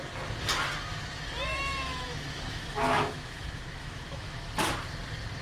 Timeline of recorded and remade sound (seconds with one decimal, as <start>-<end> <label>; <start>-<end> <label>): 0.0-1.5 recorded; 1.5-4.7 remade; 4.7-5.4 recorded